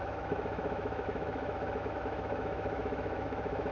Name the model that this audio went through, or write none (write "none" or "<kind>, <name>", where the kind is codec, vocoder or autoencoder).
autoencoder, DAC-VAE